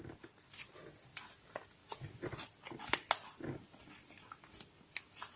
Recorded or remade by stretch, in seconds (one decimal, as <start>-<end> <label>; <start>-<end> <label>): 0.0-5.4 recorded